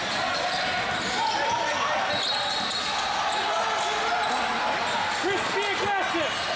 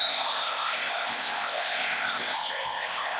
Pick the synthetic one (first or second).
second